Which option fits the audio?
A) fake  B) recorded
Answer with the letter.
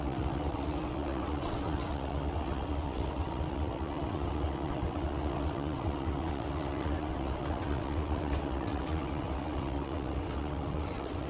A